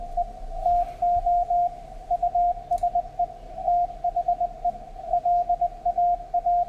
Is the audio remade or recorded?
recorded